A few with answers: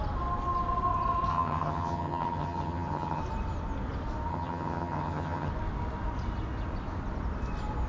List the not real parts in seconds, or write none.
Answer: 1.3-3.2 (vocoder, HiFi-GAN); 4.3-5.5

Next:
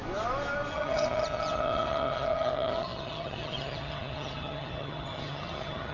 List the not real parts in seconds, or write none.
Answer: 0.7-5.9 (vocoder, HiFi-GAN)

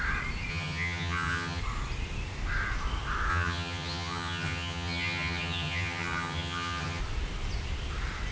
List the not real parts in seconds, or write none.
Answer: 0.5-1.6 (vocoder, HiFi-GAN); 3.3-7.0

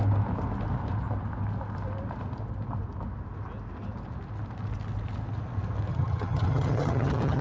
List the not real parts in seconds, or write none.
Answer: 5.9-7.4 (vocoder, HiFi-GAN)

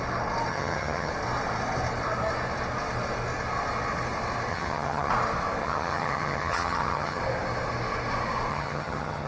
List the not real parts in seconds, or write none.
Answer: 0.5-1.1 (vocoder, HiFi-GAN); 4.5-5.1; 5.6-7.2; 8.5-9.3

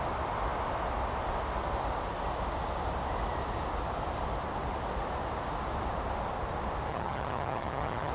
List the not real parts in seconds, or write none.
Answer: 6.9-8.1 (vocoder, HiFi-GAN)